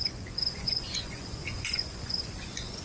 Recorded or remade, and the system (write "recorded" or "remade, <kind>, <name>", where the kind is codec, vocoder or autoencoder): remade, vocoder, Vocos